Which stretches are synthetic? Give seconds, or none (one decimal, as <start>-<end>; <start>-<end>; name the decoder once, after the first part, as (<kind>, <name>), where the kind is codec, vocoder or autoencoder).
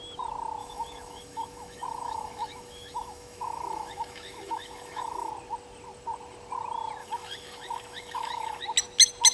0.6-5.3 (autoencoder, DAC-VAE); 7.0-8.6